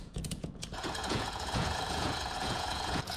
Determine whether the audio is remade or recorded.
remade